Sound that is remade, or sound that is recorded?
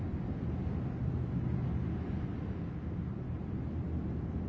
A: recorded